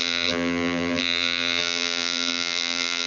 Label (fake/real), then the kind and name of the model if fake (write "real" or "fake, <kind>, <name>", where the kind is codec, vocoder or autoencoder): fake, vocoder, BigVGAN v2